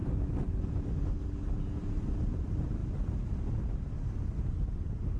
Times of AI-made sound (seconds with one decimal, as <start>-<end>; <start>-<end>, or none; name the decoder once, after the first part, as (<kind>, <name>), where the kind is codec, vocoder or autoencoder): none